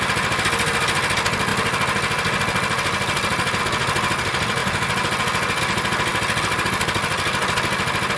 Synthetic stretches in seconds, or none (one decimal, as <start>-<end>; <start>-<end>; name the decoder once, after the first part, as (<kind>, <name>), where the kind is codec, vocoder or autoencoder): none